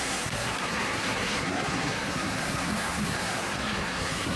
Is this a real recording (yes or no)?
no